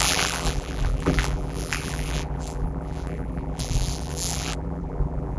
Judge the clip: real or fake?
fake